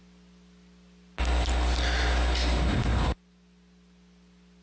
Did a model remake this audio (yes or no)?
no